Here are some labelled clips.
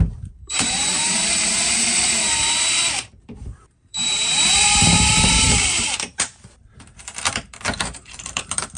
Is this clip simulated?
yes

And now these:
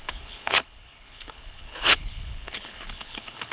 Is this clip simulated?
yes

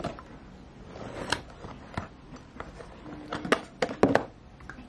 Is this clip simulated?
no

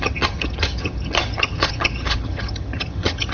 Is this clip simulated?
yes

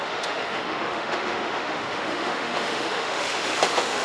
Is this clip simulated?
yes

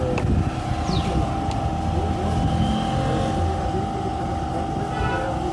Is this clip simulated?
no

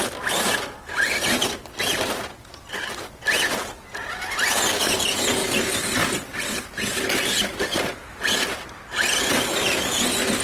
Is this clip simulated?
no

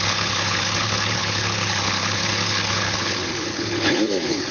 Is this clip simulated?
yes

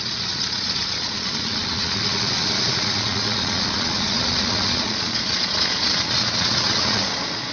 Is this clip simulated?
yes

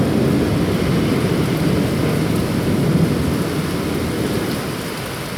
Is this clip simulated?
no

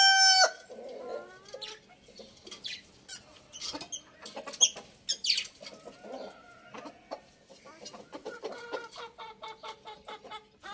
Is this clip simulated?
no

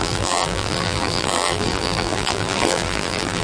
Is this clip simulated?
yes